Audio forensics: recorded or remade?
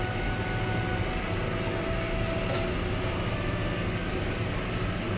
recorded